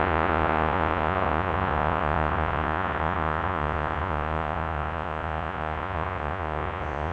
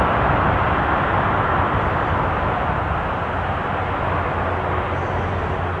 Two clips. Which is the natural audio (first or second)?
second